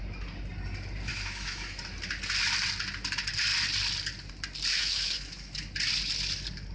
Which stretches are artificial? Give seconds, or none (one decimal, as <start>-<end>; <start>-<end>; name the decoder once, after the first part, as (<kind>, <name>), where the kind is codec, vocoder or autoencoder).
1.1-1.8 (autoencoder, DAC-VAE); 4.7-5.7